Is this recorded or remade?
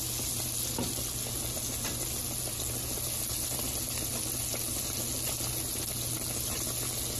recorded